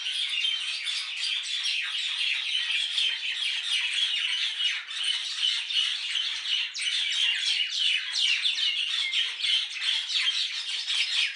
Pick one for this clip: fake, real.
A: real